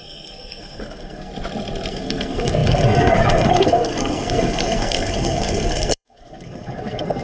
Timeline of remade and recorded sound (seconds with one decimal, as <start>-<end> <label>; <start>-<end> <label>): 0.0-1.3 remade; 1.3-1.9 recorded; 1.9-7.2 remade